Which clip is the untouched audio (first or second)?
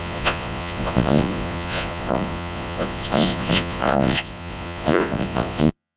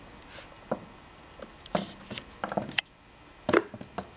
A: second